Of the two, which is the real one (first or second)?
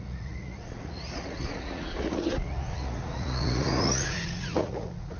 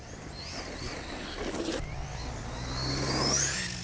second